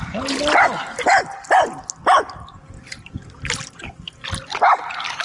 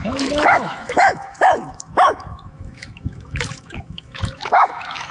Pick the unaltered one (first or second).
first